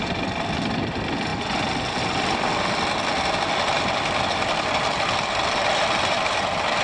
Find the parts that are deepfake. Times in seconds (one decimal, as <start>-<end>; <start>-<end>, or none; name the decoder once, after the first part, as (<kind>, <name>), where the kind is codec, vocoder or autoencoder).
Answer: none